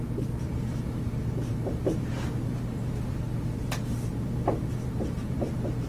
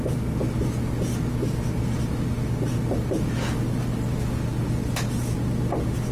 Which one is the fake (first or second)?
first